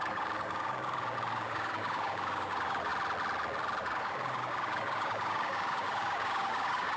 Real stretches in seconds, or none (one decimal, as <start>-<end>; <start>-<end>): 2.9-3.8